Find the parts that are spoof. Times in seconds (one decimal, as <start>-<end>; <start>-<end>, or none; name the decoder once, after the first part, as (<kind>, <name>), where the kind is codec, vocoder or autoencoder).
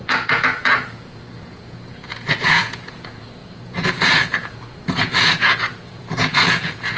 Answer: 0.0-7.0 (vocoder, Vocos)